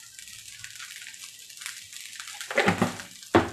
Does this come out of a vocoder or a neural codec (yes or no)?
no